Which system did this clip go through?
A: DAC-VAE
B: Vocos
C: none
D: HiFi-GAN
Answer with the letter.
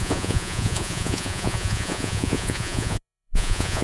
B